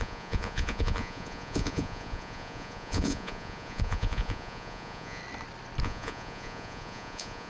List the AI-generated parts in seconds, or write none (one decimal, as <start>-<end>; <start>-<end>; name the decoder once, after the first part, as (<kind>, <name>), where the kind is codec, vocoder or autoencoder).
0.0-5.2 (vocoder, Vocos); 5.8-7.5